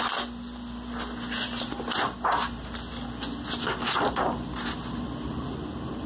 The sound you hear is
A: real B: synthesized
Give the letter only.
A